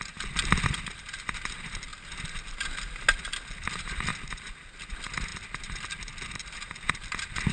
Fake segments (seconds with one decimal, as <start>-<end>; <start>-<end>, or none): none